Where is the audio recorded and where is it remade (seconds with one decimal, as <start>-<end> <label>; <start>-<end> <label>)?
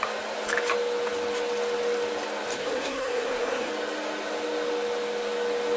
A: 0.0-2.6 recorded; 2.6-3.7 remade; 3.7-5.8 recorded